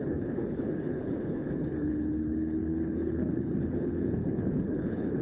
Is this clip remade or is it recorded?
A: remade